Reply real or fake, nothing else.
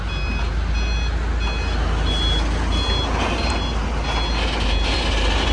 real